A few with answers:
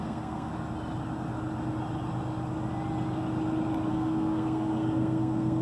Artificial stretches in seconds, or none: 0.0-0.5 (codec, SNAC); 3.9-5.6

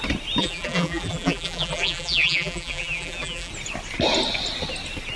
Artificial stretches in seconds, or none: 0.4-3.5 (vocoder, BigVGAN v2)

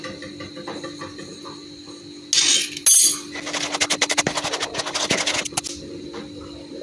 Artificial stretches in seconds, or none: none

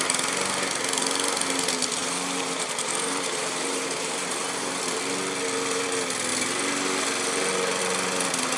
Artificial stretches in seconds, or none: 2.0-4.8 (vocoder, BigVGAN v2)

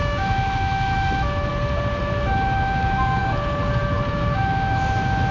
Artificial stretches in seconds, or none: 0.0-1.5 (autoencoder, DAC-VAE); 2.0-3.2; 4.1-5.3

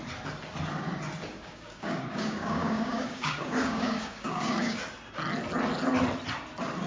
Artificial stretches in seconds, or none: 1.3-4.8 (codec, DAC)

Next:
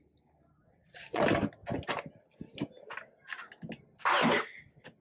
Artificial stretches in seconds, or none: 0.6-1.2 (vocoder, Vocos)